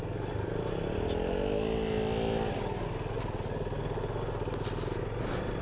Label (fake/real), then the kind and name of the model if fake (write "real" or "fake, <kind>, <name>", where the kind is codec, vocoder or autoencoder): real